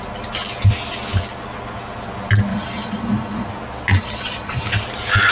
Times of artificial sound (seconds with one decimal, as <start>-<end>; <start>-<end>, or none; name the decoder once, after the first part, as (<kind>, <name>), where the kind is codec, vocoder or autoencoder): 2.5-3.5 (vocoder, Vocos); 3.9-4.7